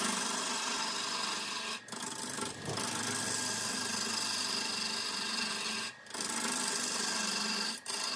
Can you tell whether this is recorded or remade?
recorded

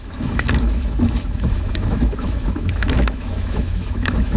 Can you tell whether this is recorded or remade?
remade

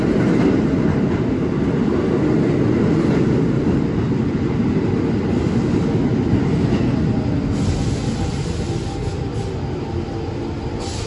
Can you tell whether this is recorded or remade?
recorded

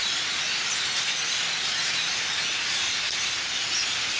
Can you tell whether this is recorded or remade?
recorded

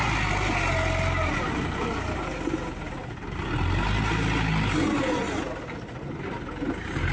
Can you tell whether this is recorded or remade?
recorded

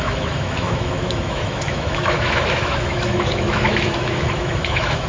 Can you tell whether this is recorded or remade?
remade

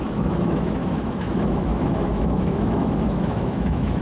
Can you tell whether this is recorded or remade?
remade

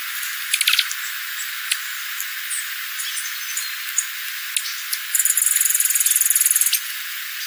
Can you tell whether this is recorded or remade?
recorded